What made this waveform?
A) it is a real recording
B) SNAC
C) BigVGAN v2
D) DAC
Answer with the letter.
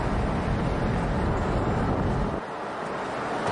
A